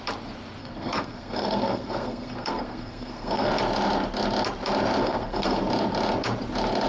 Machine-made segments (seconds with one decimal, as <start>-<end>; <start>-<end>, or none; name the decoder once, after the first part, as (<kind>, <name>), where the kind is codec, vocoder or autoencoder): 0.6-3.5 (codec, SNAC); 5.0-5.6